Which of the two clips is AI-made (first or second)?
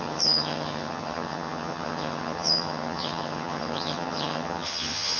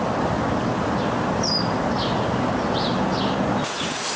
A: first